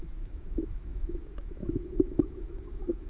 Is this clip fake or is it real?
fake